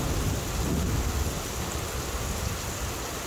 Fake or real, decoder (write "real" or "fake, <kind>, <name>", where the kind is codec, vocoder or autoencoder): real